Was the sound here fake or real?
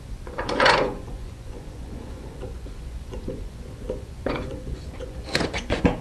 fake